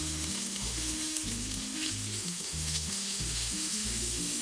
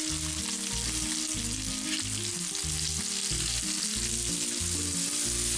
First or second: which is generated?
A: first